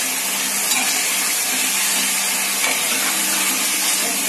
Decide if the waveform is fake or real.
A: real